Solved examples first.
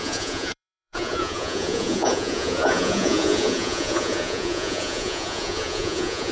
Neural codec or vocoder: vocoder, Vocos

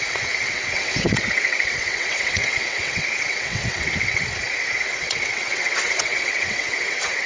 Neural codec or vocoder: vocoder, WaveNeXt